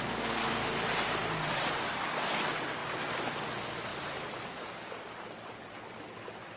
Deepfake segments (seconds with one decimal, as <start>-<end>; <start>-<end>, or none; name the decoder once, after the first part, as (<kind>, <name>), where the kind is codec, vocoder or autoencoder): none

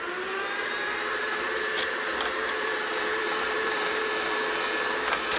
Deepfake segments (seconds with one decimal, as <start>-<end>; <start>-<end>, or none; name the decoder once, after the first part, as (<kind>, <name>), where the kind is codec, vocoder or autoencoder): 1.2-4.4 (vocoder, BigVGAN v2)

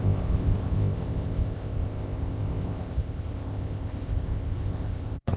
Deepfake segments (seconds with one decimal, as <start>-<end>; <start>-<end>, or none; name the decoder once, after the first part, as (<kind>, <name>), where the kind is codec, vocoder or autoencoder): 0.0-5.4 (codec, ZipCodec)

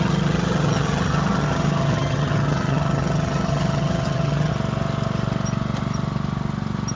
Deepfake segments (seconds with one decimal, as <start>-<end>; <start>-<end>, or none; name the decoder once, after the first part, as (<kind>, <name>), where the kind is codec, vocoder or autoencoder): 0.0-4.5 (vocoder, HiFi-GAN)

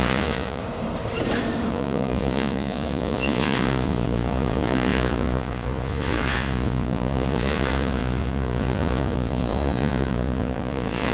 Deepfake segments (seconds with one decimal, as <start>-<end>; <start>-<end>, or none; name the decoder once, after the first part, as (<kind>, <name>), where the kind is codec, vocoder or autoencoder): 0.0-0.6 (vocoder, Vocos); 1.7-11.1

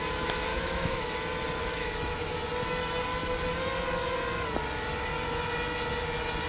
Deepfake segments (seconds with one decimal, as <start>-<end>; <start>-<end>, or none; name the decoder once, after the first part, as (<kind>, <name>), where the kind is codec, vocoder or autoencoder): 0.5-1.2 (autoencoder, DAC-VAE); 1.6-2.3